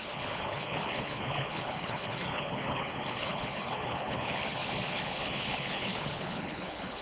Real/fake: fake